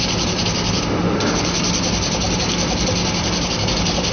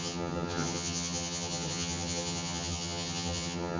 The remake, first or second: second